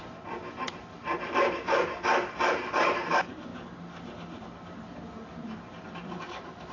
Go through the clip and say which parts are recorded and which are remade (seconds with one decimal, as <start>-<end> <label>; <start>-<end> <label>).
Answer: 0.0-0.4 remade; 0.4-0.9 recorded; 0.9-1.6 remade; 1.6-2.5 recorded; 2.5-6.7 remade

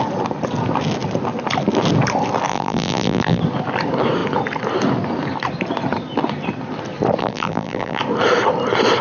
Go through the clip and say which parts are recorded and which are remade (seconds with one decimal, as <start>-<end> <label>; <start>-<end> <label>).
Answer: 0.0-2.5 recorded; 2.5-3.4 remade; 3.4-7.2 recorded; 7.2-8.0 remade; 8.0-9.0 recorded

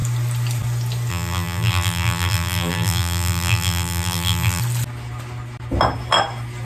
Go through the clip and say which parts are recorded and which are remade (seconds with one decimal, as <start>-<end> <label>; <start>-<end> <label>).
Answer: 0.0-1.1 recorded; 1.1-4.6 remade; 4.6-6.6 recorded

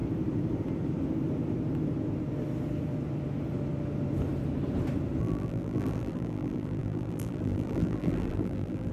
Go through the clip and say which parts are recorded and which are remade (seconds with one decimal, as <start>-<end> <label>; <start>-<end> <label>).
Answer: 0.0-5.2 recorded; 5.2-8.9 remade

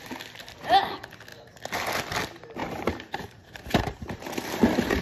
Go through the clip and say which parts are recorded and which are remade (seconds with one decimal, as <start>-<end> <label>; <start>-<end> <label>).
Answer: 0.0-2.6 recorded; 2.6-4.6 remade; 4.6-5.0 recorded

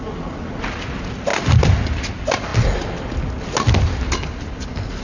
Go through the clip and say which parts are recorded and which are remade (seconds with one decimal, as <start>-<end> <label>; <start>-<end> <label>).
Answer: 0.0-5.0 recorded

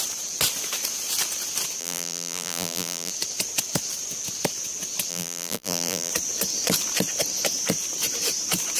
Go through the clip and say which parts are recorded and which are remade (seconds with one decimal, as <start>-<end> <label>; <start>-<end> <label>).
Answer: 0.0-1.8 recorded; 1.8-3.1 remade; 3.1-5.1 recorded; 5.1-6.1 remade; 6.1-8.8 recorded